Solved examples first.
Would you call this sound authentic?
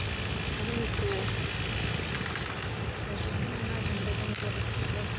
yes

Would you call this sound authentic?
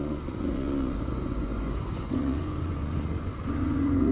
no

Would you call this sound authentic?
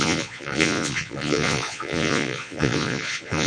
no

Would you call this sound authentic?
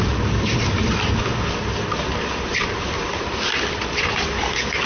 yes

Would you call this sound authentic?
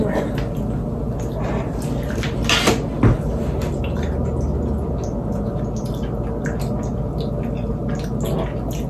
yes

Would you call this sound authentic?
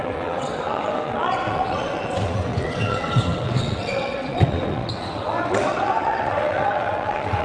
no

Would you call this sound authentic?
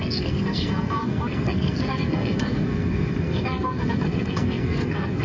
no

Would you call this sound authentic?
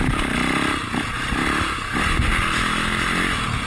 yes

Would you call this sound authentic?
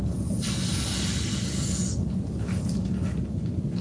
no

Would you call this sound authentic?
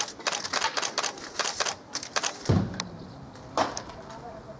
yes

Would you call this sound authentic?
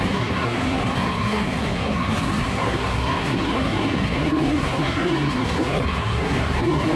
no